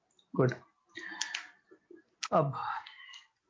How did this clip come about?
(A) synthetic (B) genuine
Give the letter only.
B